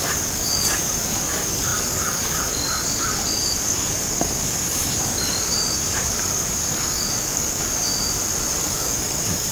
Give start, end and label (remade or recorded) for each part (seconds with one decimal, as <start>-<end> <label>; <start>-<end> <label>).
0.0-7.9 remade; 7.9-8.5 recorded; 8.5-9.5 remade

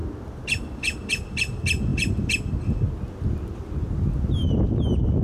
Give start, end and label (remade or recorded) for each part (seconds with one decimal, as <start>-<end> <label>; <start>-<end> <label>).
0.0-5.2 recorded

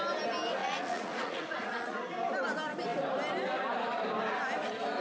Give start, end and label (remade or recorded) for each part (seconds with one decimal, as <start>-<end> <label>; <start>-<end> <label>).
0.0-0.6 recorded; 0.6-2.1 remade; 2.1-5.0 recorded